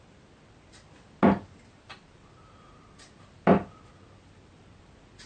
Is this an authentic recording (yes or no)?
yes